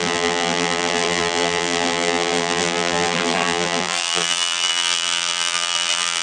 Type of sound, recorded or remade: remade